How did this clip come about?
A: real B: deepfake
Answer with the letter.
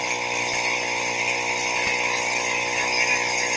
A